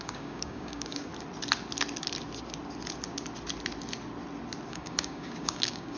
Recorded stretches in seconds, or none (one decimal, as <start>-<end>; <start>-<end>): 1.1-4.7